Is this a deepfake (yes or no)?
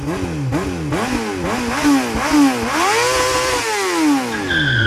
no